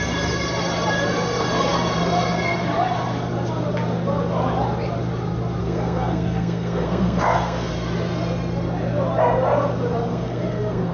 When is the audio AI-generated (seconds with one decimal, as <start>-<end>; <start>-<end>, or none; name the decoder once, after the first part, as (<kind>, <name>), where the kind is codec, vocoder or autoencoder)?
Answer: 5.6-7.7 (codec, SNAC); 10.1-10.9